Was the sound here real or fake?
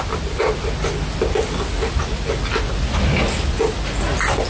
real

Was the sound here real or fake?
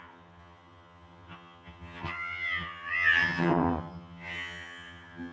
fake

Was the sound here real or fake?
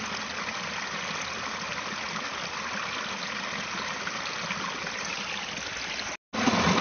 real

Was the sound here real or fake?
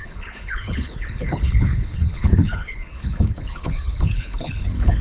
fake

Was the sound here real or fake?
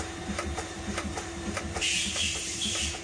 fake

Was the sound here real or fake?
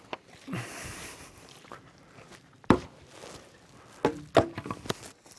real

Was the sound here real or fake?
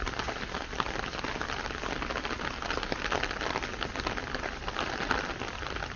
real